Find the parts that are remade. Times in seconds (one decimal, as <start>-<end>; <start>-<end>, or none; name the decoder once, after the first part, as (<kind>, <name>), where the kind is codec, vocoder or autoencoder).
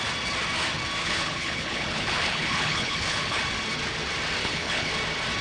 1.0-3.4 (codec, HILCodec); 4.4-4.9